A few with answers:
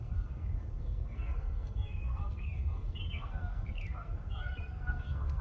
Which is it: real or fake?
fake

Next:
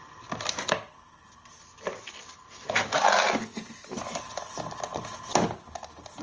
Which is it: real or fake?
real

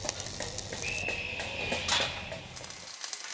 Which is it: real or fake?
real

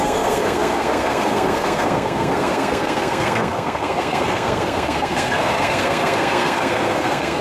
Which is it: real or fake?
fake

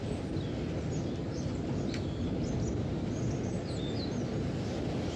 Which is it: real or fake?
real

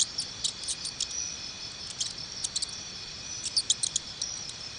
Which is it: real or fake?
real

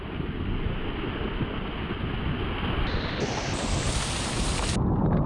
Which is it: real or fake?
real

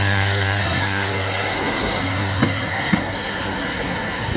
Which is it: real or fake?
fake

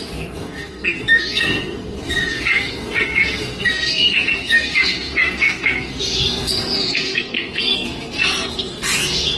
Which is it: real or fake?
fake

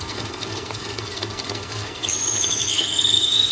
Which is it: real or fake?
fake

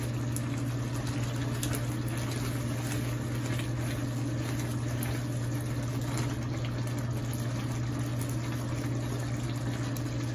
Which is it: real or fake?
real